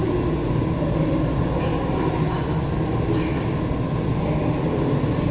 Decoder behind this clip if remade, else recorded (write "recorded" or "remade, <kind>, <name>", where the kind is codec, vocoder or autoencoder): recorded